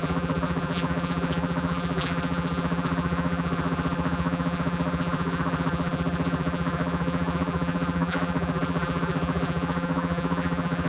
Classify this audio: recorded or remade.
remade